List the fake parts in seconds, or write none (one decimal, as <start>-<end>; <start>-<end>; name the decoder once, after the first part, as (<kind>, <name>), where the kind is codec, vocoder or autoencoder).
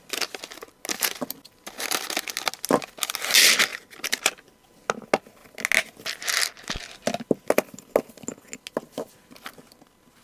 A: 3.7-4.3 (vocoder, BigVGAN v2)